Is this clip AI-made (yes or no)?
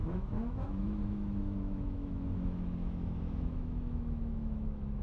yes